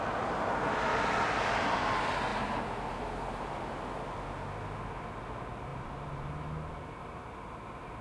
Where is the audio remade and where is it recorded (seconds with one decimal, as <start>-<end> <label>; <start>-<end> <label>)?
0.0-2.3 recorded; 2.3-3.9 remade; 3.9-5.7 recorded; 5.7-7.2 remade; 7.2-8.0 recorded